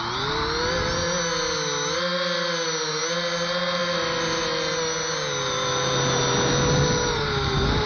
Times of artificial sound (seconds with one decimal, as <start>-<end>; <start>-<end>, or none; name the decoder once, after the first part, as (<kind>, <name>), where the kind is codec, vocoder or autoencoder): none